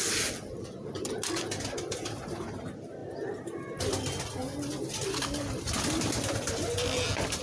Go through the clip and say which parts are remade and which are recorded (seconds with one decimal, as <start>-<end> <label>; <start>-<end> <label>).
0.0-7.4 recorded